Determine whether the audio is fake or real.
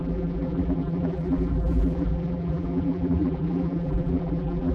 fake